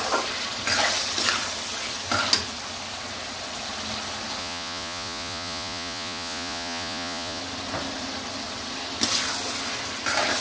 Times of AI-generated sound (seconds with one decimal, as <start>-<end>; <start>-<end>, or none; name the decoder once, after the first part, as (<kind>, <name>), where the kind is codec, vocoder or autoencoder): 4.4-7.4 (vocoder, Vocos)